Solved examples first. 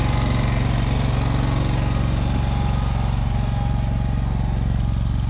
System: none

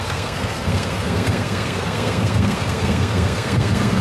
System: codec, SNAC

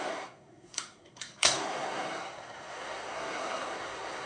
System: codec, SNAC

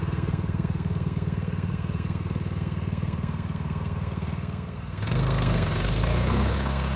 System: codec, SNAC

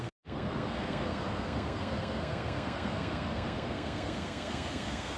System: codec, SNAC